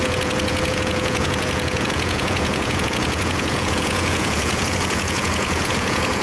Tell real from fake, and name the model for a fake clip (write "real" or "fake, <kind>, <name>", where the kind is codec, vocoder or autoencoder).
fake, vocoder, Vocos